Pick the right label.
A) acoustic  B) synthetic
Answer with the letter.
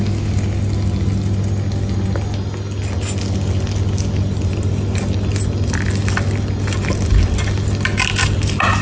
A